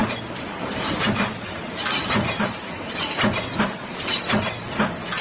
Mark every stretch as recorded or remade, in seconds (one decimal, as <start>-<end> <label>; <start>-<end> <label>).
0.0-3.1 remade; 3.1-3.8 recorded; 3.8-4.3 remade; 4.3-5.2 recorded